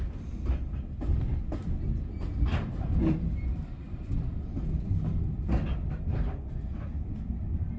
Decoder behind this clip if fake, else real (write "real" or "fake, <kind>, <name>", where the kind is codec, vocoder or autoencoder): real